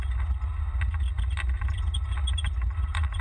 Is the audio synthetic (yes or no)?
no